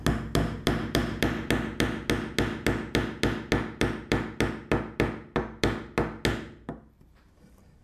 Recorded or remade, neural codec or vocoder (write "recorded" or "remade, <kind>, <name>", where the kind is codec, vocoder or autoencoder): recorded